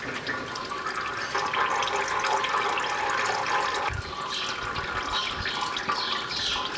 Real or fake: real